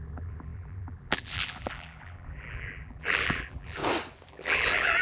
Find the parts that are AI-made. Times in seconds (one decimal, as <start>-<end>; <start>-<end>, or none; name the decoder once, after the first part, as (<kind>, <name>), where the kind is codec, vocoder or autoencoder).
0.0-3.8 (vocoder, BigVGAN v2); 4.3-5.0